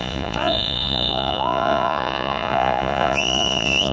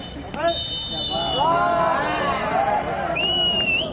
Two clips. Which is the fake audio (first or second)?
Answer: first